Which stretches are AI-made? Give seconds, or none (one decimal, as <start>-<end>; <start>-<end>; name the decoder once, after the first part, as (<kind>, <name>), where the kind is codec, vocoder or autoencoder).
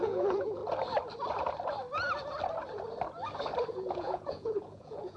0.0-0.6 (vocoder, Vocos); 3.7-5.2